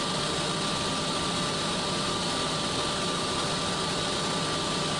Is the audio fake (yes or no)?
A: no